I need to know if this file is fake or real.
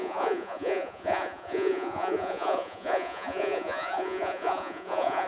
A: fake